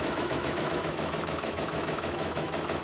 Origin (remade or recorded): remade